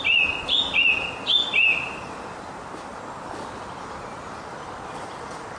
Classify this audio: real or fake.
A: real